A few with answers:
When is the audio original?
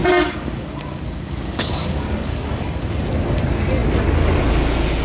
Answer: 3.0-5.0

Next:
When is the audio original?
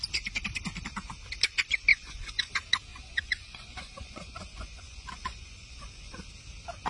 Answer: 0.0-1.9; 2.5-2.9; 6.3-6.9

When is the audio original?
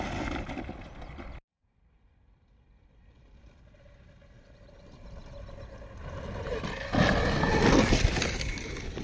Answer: 0.0-9.0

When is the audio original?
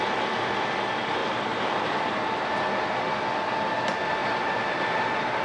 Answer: 0.0-1.2; 2.5-4.2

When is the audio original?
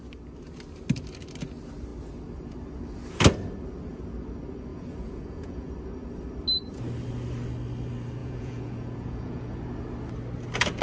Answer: 0.0-4.7; 5.7-8.2; 9.5-10.8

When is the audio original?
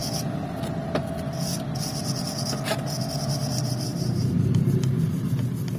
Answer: 0.0-3.9; 5.3-5.8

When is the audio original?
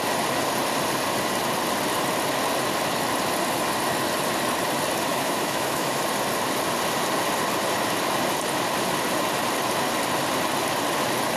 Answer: 0.0-5.1; 6.0-11.4